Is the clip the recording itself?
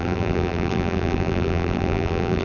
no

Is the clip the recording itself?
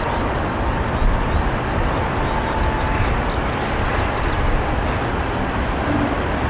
yes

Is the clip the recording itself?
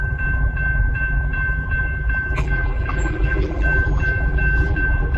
no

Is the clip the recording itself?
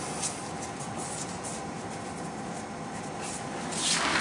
yes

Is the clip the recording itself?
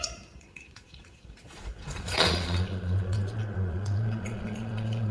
no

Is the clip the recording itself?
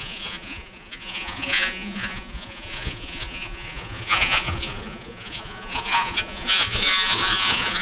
no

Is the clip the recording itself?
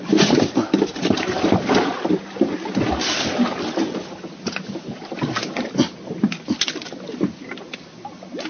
yes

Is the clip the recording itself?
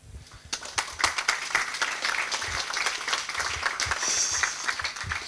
yes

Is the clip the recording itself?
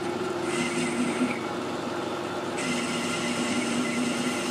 yes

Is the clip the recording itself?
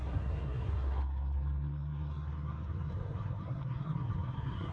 no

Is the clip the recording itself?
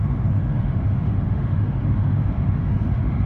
no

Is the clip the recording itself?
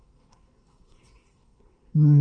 no